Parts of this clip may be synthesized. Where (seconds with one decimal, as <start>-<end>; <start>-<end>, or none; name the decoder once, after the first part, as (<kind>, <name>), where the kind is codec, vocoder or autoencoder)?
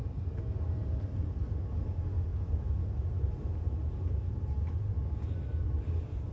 none